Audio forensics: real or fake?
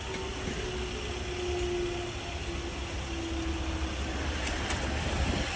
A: real